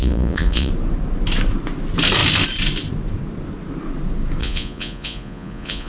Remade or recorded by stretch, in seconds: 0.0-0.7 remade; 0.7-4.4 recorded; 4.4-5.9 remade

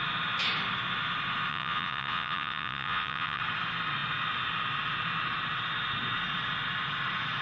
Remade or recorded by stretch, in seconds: 0.0-1.5 recorded; 1.5-3.4 remade; 3.4-7.4 recorded